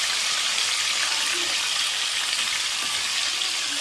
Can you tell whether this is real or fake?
real